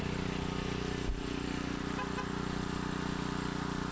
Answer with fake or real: real